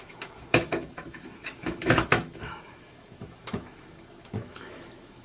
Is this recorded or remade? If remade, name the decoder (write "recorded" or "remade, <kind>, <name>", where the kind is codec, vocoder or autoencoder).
remade, autoencoder, DAC-VAE